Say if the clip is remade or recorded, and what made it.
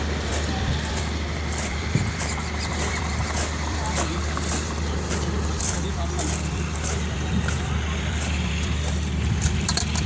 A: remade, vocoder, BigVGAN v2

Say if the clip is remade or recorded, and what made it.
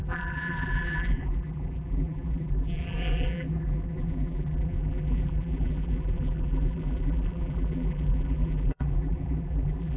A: remade, vocoder, BigVGAN v2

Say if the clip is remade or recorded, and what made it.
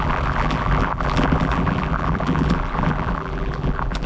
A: remade, vocoder, BigVGAN v2